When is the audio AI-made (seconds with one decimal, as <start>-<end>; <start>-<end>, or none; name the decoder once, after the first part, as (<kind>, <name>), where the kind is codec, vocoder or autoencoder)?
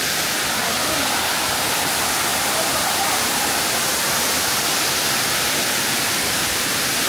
0.0-7.1 (vocoder, BigVGAN v2)